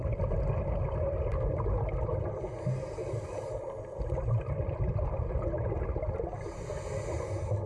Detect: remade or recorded recorded